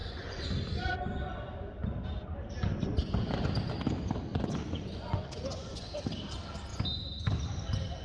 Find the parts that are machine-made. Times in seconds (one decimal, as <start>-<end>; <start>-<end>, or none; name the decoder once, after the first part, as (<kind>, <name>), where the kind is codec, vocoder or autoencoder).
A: 0.0-0.5 (vocoder, Vocos); 4.3-5.9